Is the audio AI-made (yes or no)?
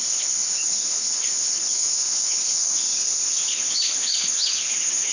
yes